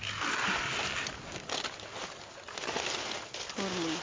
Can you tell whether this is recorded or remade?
recorded